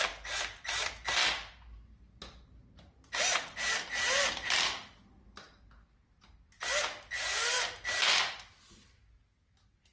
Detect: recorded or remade recorded